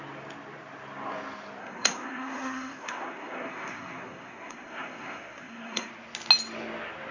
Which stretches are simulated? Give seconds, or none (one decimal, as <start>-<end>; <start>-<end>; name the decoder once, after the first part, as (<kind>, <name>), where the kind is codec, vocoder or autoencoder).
1.6-5.9 (codec, SNAC)

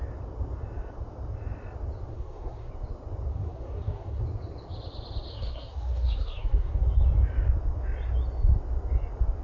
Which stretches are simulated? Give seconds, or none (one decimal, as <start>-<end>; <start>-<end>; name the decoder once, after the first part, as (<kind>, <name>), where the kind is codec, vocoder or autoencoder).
2.1-2.7 (codec, SNAC); 3.3-4.2; 5.3-6.8